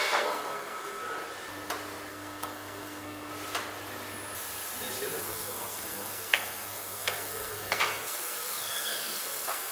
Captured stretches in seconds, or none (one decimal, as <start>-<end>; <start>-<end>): 1.0-2.1; 3.3-5.2